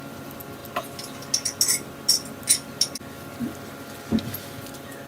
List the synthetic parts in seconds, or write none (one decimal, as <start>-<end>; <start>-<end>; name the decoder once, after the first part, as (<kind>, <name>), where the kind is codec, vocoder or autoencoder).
none